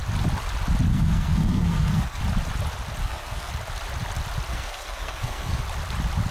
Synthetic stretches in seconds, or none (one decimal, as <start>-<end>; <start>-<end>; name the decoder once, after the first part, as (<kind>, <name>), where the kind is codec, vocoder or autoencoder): 0.9-2.2 (codec, SNAC); 3.0-3.5; 4.5-5.6